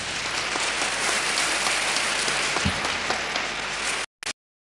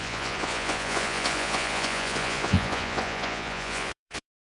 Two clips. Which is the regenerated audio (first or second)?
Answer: second